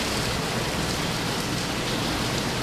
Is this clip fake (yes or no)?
no